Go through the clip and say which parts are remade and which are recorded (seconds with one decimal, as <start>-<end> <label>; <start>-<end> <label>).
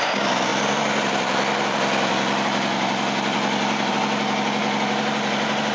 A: 0.0-0.5 recorded; 0.5-3.9 remade; 3.9-4.6 recorded; 4.6-5.7 remade